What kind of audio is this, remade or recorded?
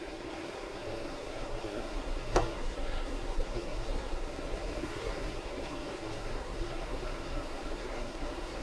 remade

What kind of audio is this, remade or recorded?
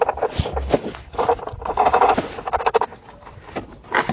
recorded